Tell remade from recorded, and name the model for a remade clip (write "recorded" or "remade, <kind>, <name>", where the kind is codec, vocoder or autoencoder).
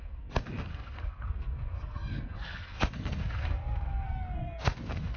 remade, codec, SNAC